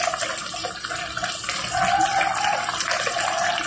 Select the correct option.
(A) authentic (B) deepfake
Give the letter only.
A